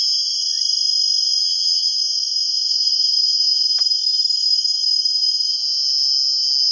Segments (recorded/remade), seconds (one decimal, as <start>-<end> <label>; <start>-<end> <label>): 0.0-1.4 recorded; 1.4-2.0 remade; 2.0-6.7 recorded